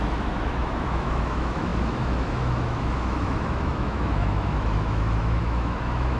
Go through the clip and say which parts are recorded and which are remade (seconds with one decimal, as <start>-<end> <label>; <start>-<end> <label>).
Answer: 0.0-6.2 remade